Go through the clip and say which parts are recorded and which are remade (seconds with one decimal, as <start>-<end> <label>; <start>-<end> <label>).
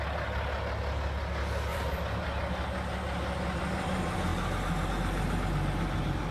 0.0-1.7 recorded; 1.7-2.4 remade; 2.4-6.3 recorded